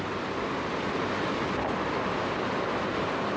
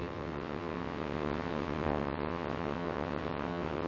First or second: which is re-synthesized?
second